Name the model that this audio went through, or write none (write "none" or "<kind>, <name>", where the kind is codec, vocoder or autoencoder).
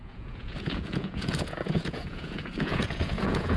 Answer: vocoder, Vocos